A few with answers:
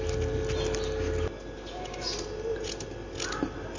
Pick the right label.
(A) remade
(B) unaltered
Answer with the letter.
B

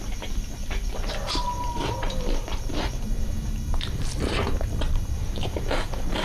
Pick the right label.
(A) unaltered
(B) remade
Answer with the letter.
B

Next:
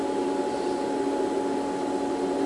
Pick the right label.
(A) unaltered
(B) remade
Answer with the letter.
A